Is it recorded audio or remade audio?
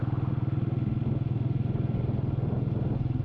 recorded